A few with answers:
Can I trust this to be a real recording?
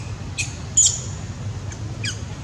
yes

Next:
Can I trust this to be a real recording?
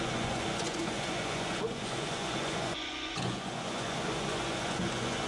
no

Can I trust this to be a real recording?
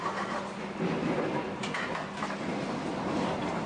yes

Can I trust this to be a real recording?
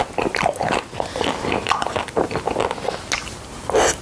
yes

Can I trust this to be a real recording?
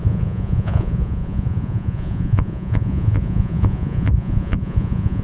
no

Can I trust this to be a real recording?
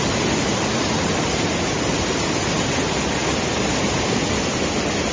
yes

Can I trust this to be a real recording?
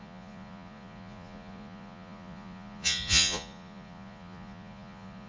no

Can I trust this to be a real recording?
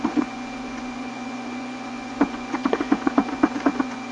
no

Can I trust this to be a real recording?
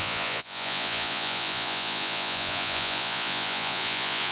no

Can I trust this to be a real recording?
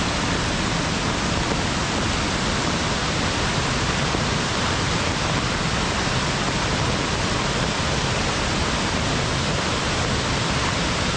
yes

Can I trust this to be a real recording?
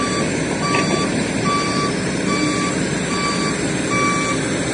yes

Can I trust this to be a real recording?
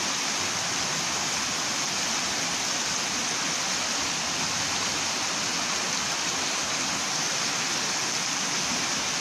yes